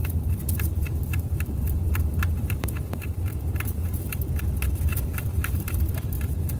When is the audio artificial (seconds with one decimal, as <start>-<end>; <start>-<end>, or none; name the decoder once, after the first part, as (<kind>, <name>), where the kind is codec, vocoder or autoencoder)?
0.0-4.0 (vocoder, BigVGAN v2); 4.9-5.8